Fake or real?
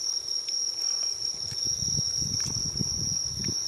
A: real